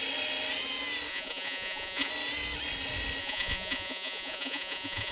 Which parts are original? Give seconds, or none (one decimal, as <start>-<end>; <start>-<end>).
0.0-1.1; 2.1-3.2